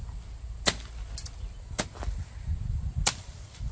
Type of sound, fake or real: real